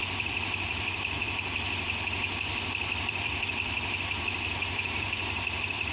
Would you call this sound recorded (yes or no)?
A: no